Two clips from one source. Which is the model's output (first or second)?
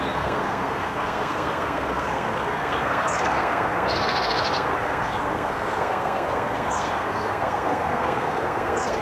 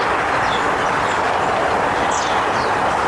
first